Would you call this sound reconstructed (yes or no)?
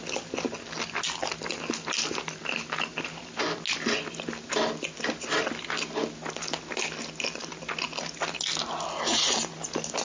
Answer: no